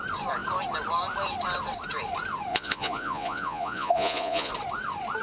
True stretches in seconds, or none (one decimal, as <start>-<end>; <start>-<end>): 0.0-2.5; 4.5-5.2